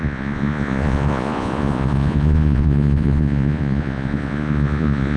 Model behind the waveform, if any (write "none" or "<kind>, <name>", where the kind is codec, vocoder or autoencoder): vocoder, Vocos